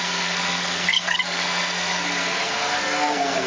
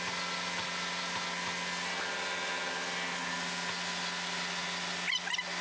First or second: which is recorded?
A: second